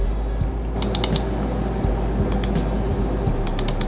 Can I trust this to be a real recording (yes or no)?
yes